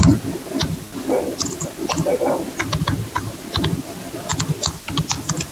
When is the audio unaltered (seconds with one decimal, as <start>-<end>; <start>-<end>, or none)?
0.0-5.5